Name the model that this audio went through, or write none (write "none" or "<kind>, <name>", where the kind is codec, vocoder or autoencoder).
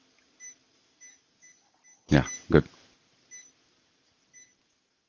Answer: none